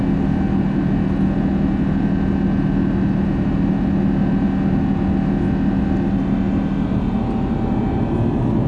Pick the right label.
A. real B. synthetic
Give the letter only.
A